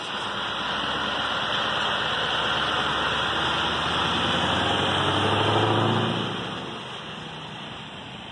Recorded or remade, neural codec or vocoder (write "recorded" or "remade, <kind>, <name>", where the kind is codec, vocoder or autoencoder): recorded